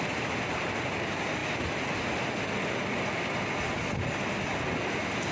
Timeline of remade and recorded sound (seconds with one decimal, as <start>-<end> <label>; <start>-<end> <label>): 0.0-5.3 recorded